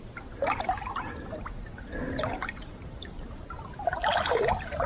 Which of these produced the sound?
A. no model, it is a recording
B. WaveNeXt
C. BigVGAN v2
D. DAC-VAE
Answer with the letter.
C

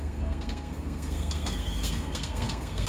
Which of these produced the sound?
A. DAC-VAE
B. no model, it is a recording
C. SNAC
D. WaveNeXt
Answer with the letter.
C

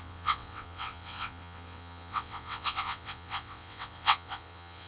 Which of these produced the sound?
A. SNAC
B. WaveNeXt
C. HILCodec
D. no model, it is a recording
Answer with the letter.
B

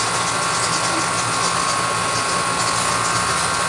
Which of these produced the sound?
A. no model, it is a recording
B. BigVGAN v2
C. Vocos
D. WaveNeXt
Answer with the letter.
A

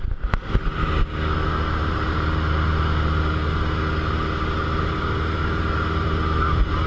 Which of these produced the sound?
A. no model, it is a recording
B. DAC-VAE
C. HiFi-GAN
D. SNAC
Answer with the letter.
A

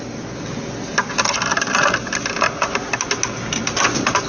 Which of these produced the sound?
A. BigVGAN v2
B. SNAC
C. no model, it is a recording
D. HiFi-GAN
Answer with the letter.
C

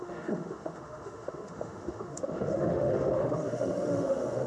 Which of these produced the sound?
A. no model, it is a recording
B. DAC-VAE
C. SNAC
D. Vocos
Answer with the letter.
B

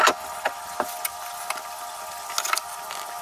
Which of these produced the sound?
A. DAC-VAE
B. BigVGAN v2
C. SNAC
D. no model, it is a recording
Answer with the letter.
D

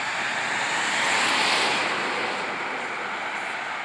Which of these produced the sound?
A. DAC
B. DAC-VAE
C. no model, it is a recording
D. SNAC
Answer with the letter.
C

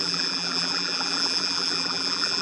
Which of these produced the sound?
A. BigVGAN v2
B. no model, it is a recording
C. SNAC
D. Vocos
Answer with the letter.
A